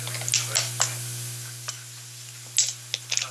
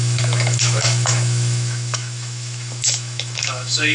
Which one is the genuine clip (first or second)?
first